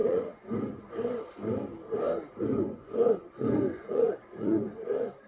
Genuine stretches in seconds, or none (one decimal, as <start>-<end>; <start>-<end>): 0.8-2.5; 4.8-5.3